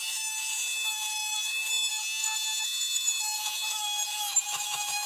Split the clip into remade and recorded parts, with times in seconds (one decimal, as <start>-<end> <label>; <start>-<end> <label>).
0.0-1.9 remade; 1.9-2.6 recorded; 2.6-5.1 remade